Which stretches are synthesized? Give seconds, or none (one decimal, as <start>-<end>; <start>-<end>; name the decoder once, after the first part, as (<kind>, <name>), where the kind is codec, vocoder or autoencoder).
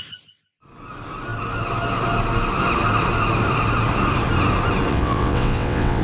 4.9-6.0 (vocoder, WaveNeXt)